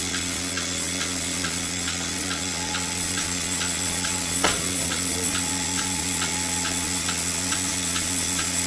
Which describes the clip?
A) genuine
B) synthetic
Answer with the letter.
B